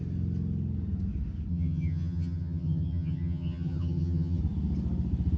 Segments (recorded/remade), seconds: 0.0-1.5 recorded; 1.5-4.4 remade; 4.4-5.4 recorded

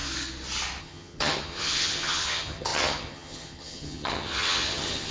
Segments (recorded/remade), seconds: 0.0-0.8 recorded; 0.8-5.1 remade

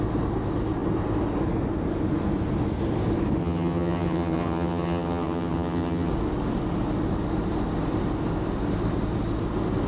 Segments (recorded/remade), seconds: 0.0-3.4 recorded; 3.4-6.1 remade; 6.1-9.9 recorded

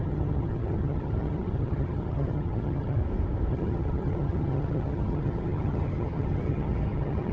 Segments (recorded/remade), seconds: 0.0-3.0 remade; 3.0-3.5 recorded; 3.5-7.3 remade

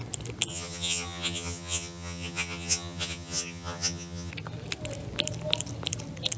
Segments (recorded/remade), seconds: 0.0-0.5 recorded; 0.5-4.3 remade; 4.3-6.4 recorded

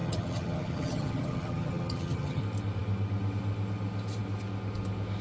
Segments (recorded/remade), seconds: 0.0-2.4 remade; 2.4-5.2 recorded

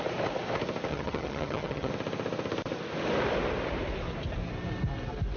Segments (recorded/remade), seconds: 0.0-0.9 recorded; 0.9-1.9 remade; 1.9-5.4 recorded

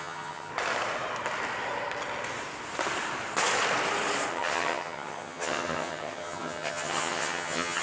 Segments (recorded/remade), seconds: 0.0-0.5 remade; 0.5-4.3 recorded; 4.3-7.8 remade